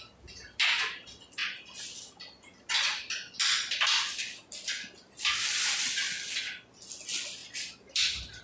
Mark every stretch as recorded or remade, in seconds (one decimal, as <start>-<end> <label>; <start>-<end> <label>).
0.0-8.4 recorded